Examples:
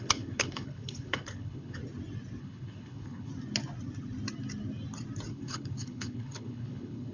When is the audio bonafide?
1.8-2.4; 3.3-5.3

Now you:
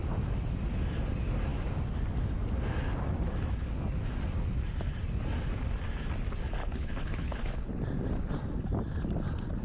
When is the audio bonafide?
0.0-6.6; 7.7-9.6

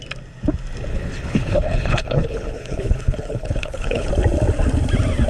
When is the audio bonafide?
0.0-0.9; 4.1-5.3

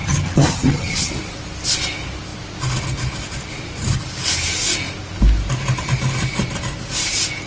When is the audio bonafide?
1.1-7.5